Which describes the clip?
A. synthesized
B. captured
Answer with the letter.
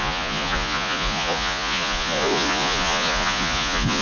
A